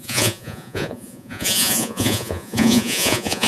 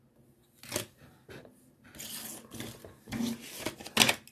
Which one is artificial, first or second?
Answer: first